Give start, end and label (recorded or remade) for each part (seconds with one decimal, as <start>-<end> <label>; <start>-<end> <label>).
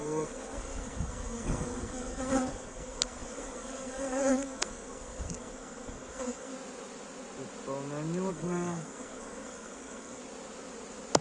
0.0-6.5 remade; 6.5-8.3 recorded; 8.3-10.2 remade; 10.2-11.2 recorded